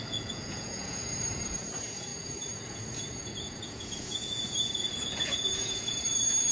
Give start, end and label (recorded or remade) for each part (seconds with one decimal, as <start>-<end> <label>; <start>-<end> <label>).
0.0-6.5 remade